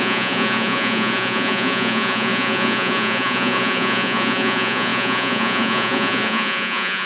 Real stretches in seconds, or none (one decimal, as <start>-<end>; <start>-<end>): none